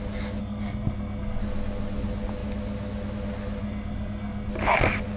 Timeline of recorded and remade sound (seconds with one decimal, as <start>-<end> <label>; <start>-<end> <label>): 0.0-0.4 recorded; 0.4-1.4 remade; 1.4-3.6 recorded; 3.6-4.5 remade; 4.5-5.2 recorded